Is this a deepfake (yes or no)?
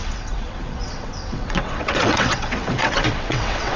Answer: yes